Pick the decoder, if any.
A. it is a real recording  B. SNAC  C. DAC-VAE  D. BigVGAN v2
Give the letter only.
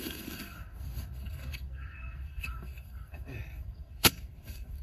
B